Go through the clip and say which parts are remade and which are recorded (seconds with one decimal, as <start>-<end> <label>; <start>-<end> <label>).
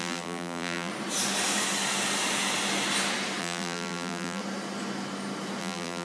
0.0-0.9 remade; 0.9-3.4 recorded; 3.4-4.4 remade; 4.4-5.6 recorded; 5.6-6.0 remade